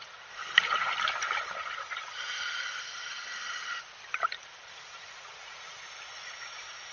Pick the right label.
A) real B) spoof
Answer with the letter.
B